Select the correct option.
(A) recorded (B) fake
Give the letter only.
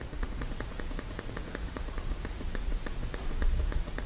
B